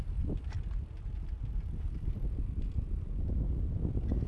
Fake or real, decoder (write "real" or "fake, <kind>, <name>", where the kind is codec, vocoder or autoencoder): real